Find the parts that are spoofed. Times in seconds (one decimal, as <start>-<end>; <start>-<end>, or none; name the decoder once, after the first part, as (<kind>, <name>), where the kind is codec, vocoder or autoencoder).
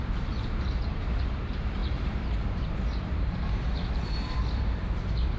0.0-5.4 (vocoder, BigVGAN v2)